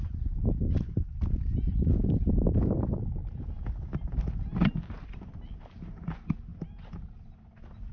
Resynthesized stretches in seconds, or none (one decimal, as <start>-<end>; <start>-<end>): none